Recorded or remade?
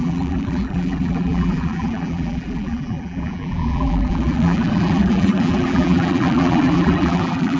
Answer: remade